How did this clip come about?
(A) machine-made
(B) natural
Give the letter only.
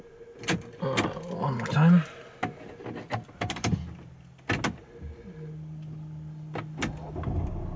B